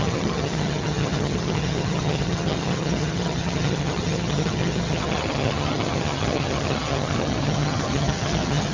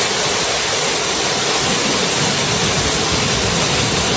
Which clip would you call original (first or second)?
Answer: second